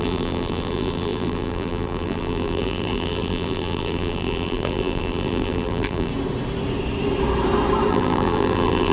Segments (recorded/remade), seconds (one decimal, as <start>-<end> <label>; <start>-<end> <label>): 0.0-6.1 remade; 6.1-7.9 recorded; 7.9-8.9 remade

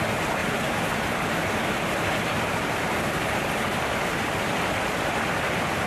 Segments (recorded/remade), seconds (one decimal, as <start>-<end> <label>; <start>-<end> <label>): 0.0-0.4 recorded; 0.4-3.9 remade; 3.9-5.9 recorded

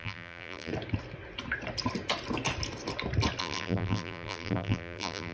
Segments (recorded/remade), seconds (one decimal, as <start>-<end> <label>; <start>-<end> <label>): 0.0-0.7 remade; 0.7-3.4 recorded; 3.4-5.3 remade

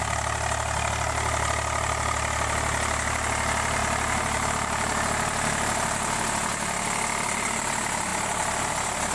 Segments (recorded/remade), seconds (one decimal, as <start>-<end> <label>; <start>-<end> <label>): 0.0-8.1 recorded; 8.1-8.7 remade; 8.7-9.1 recorded

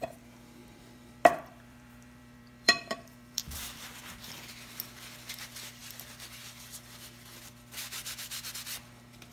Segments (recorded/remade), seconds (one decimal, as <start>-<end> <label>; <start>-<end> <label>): 0.0-0.6 recorded; 0.6-4.5 remade; 4.5-9.3 recorded